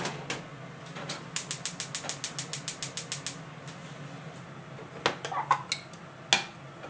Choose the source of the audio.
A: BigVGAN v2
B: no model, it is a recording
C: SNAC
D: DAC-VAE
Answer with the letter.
B